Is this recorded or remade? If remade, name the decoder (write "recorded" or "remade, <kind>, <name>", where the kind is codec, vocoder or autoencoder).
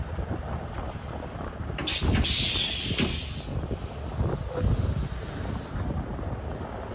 recorded